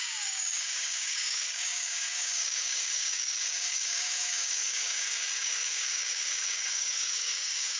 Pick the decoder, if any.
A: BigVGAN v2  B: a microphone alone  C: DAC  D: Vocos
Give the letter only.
C